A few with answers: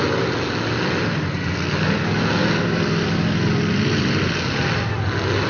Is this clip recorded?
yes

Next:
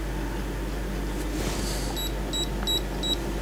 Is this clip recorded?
yes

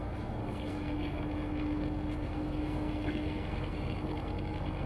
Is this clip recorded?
no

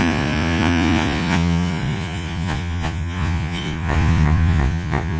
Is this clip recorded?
no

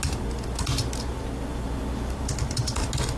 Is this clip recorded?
yes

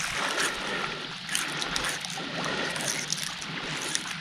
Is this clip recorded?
yes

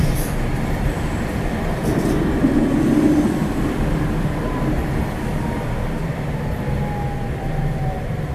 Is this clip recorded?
no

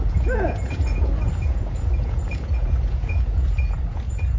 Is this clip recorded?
no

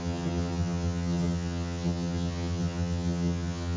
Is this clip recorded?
no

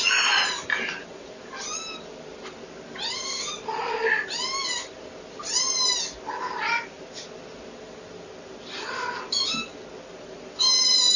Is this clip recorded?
yes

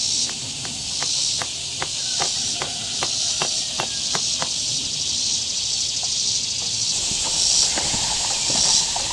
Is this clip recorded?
yes